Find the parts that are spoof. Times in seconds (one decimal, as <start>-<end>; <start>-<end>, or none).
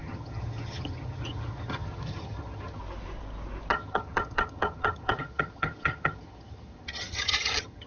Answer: 0.0-2.8; 3.7-7.9